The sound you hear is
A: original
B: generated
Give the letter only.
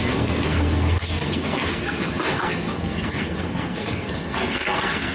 B